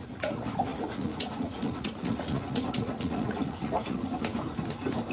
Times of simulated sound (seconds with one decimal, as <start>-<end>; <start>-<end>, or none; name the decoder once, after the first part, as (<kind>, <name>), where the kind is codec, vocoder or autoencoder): 0.0-4.3 (vocoder, Vocos)